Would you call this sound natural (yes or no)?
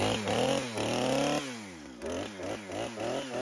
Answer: yes